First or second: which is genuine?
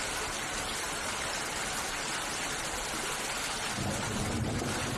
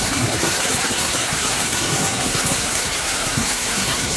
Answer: first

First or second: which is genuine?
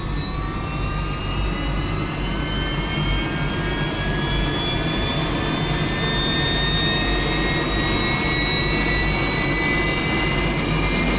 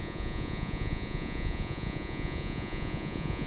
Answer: first